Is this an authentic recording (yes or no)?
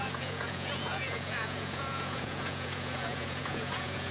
no